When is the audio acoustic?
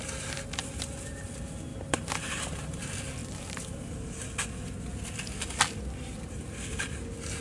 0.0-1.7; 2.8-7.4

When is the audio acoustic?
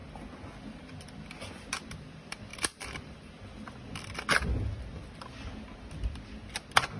0.0-2.5; 3.1-7.0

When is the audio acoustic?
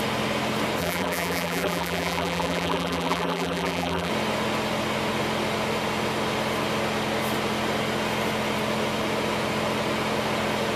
0.0-0.8; 4.1-10.8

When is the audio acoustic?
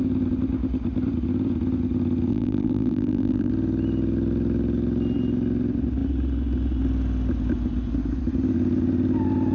0.0-2.3; 3.5-9.5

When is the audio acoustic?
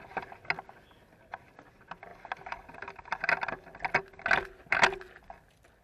0.0-5.8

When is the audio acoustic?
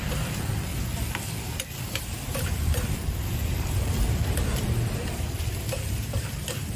0.7-1.9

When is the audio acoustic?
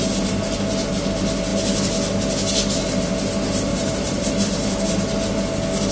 0.0-3.7; 4.3-5.9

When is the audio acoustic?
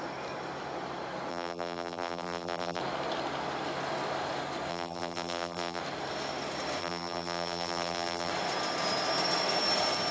0.0-1.3; 2.8-4.7; 5.8-6.8; 8.3-10.1